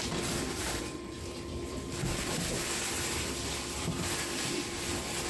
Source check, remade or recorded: recorded